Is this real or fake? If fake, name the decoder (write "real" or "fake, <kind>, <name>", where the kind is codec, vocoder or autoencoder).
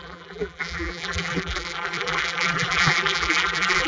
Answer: fake, vocoder, BigVGAN v2